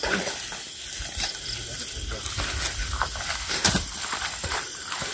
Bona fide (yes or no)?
yes